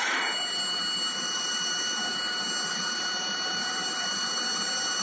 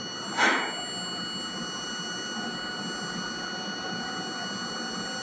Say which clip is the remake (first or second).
first